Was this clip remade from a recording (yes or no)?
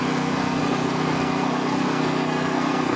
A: yes